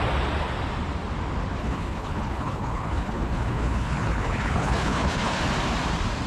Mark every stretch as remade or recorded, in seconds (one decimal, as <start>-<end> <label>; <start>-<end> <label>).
0.0-1.6 recorded; 1.6-5.4 remade; 5.4-6.3 recorded